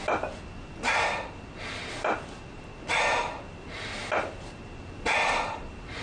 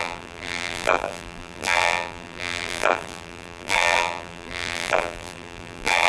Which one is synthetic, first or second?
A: second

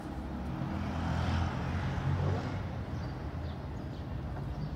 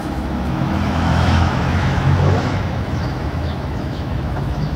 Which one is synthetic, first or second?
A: second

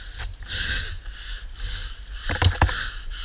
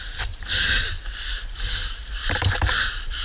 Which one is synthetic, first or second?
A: second